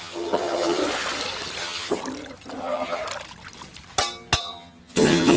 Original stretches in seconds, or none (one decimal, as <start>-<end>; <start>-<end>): 0.8-1.6; 2.0-2.6; 3.0-4.4